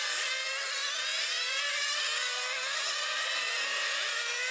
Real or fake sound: fake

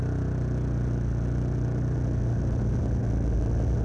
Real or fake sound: real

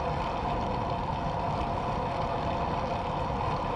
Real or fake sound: real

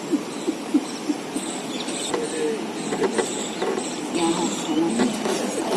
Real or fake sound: real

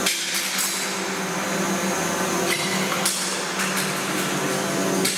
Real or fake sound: real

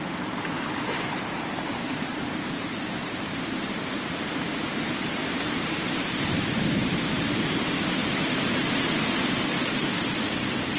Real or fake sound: fake